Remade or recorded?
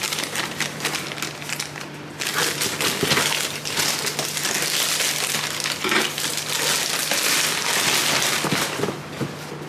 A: recorded